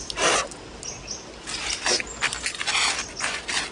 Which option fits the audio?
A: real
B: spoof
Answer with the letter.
A